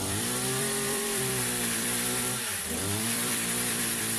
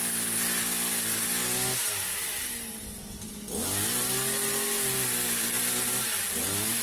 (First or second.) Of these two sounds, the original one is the second